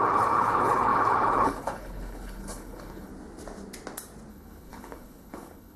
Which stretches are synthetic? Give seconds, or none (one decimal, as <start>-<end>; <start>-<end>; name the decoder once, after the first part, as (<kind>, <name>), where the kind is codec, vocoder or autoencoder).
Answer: 0.0-3.1 (codec, HILCodec); 4.3-5.8